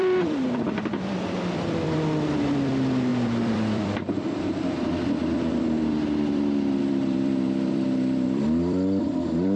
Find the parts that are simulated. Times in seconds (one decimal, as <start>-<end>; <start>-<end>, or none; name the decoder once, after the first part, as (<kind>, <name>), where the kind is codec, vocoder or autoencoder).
0.0-9.6 (vocoder, BigVGAN v2)